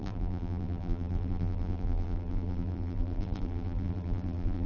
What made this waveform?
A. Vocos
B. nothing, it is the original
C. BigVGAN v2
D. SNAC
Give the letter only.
C